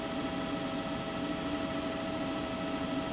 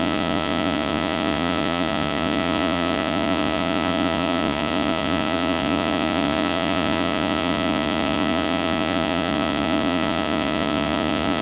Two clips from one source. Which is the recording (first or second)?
first